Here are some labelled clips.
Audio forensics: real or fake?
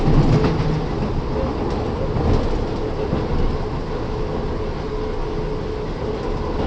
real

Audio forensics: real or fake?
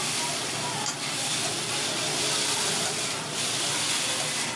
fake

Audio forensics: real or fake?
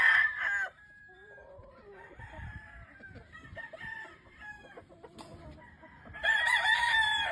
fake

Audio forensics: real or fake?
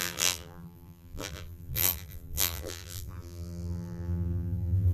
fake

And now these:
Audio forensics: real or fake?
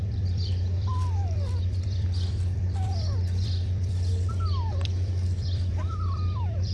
fake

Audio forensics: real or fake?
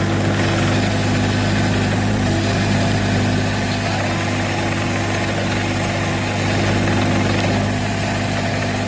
real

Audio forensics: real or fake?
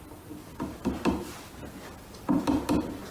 real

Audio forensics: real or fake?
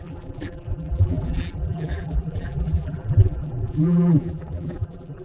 fake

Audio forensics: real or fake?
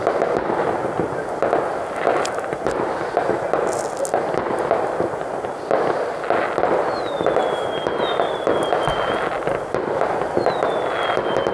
real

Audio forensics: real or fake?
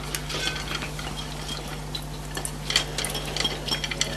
real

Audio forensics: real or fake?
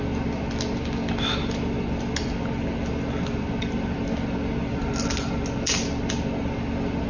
real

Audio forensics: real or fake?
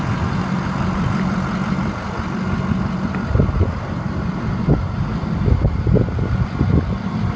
real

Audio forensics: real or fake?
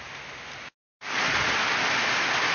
real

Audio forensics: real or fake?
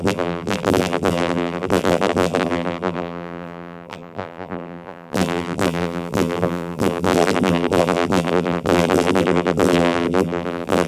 fake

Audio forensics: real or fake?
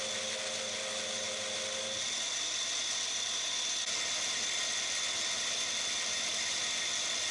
real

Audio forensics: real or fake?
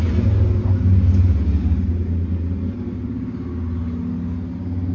real